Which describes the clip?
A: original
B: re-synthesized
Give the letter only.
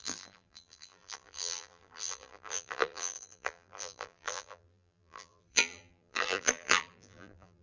B